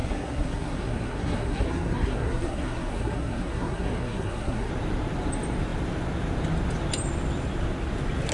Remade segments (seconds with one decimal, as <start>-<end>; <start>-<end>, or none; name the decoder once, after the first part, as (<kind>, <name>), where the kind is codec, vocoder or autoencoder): 0.0-4.7 (codec, SNAC)